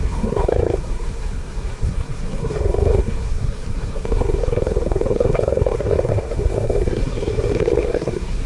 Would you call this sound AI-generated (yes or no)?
yes